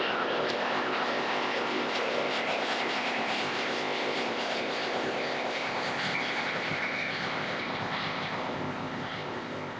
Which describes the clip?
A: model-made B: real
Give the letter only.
A